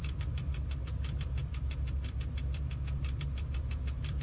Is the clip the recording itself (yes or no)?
no